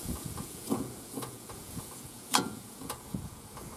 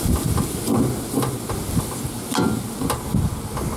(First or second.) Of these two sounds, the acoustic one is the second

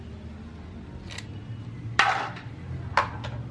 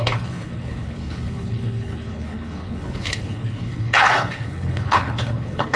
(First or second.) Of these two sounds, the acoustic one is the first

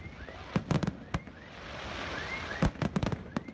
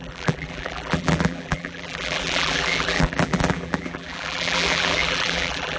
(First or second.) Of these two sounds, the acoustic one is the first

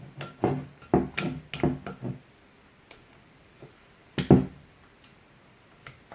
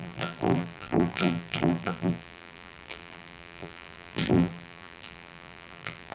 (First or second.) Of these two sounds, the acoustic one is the first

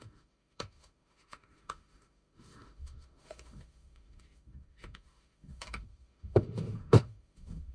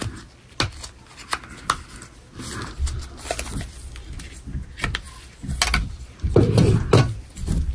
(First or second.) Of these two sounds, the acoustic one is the second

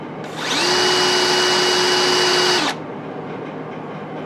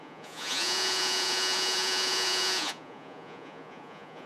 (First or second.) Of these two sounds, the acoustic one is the first